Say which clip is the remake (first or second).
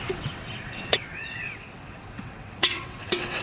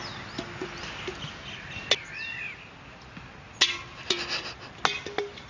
first